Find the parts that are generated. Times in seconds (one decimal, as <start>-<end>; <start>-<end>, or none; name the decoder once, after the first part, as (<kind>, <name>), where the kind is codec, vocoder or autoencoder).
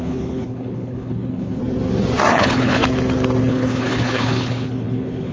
0.0-1.6 (codec, HILCodec); 2.3-2.8; 3.5-5.3